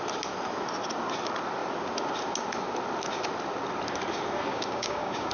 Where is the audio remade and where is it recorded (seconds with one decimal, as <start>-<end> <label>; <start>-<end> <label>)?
0.0-4.5 recorded; 4.5-5.3 remade